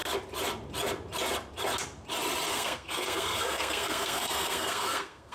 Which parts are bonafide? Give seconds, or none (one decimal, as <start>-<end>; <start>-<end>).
0.0-2.5